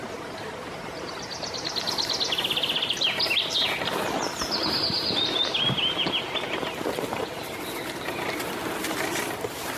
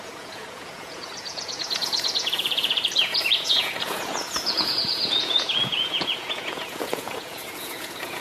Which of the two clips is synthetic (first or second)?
second